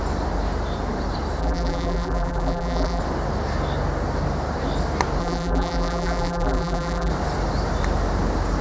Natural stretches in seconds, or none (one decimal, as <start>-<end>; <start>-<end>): 0.0-1.4; 3.0-5.2; 7.1-8.6